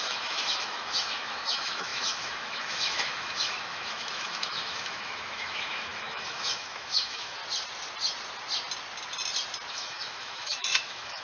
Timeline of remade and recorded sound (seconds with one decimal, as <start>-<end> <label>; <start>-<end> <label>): 0.0-7.4 remade; 7.4-9.7 recorded; 9.7-11.2 remade

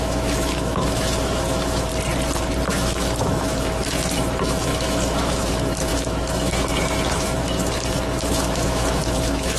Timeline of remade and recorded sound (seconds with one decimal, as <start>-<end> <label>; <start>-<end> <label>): 0.0-1.9 remade; 1.9-2.7 recorded; 2.7-9.6 remade

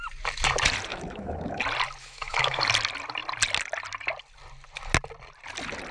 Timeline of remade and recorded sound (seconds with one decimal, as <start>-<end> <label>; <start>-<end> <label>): 0.0-0.9 recorded; 0.9-1.6 remade; 1.6-2.0 recorded; 2.0-2.6 remade; 2.6-5.9 recorded

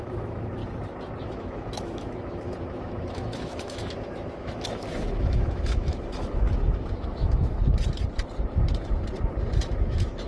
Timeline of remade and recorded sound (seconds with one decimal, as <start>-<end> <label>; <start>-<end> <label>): 0.0-0.6 remade; 0.6-1.2 recorded; 1.2-7.6 remade; 7.6-9.7 recorded; 9.7-10.3 remade

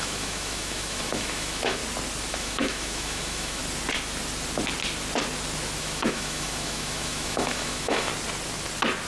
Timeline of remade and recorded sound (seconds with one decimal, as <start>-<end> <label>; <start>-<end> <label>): 0.0-1.8 remade; 1.8-2.3 recorded; 2.3-3.6 remade; 3.6-5.8 recorded; 5.8-8.1 remade; 8.1-9.1 recorded

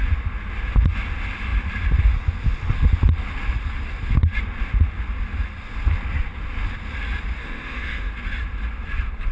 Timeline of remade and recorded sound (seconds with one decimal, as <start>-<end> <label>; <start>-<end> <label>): 0.0-7.4 recorded; 7.4-8.1 remade; 8.1-9.3 recorded

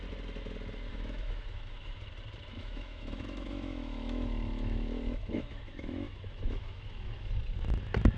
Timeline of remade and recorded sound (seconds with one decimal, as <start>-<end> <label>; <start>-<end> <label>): 0.0-0.9 recorded; 0.9-2.0 remade; 2.0-2.5 recorded; 2.5-7.3 remade; 7.3-8.2 recorded

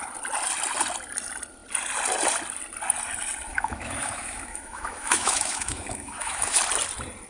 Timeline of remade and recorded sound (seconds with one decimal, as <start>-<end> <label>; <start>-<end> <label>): 0.0-3.5 recorded; 3.5-6.6 remade; 6.6-7.3 recorded